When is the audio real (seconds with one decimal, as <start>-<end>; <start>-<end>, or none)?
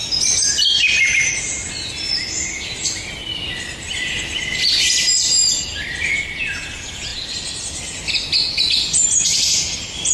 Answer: 0.0-10.1